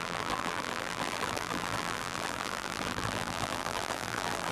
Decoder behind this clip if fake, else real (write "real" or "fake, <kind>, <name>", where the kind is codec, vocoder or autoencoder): fake, vocoder, BigVGAN v2